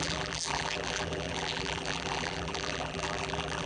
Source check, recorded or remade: remade